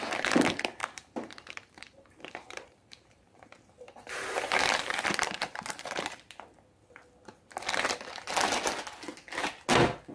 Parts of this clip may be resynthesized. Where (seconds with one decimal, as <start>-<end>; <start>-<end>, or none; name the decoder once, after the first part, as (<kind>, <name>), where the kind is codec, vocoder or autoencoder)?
0.8-6.0 (vocoder, BigVGAN v2)

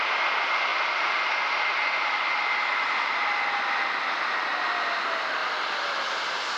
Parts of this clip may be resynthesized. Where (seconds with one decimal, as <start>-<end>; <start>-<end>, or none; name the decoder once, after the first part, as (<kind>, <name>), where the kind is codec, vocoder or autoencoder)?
5.4-6.6 (vocoder, BigVGAN v2)